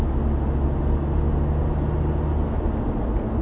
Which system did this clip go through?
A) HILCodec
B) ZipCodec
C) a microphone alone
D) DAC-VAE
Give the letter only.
C